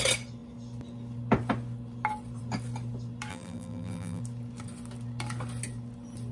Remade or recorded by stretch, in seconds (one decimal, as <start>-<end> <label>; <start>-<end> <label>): 0.0-3.3 recorded; 3.3-4.2 remade; 4.2-6.3 recorded